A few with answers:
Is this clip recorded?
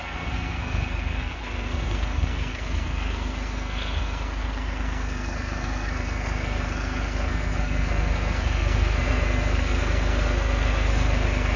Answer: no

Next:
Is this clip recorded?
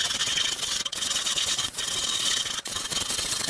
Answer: no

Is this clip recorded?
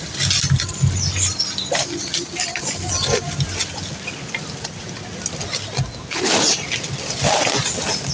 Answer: yes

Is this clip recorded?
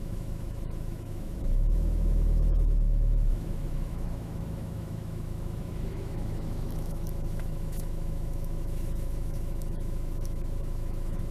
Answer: no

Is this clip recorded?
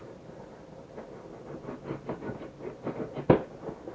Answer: yes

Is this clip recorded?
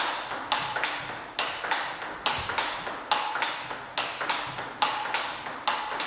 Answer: yes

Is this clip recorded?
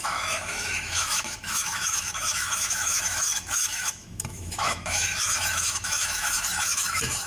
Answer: no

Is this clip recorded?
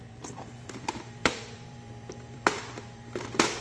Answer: no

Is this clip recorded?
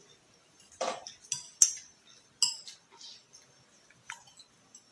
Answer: yes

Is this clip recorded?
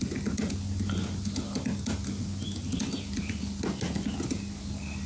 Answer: yes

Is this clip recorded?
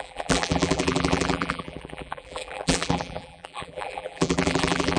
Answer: no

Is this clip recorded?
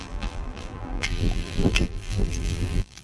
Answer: no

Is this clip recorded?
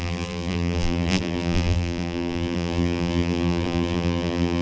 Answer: no